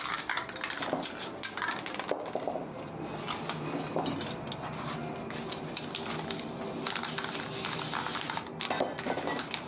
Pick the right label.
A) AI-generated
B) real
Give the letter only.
B